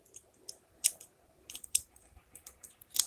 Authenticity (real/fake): fake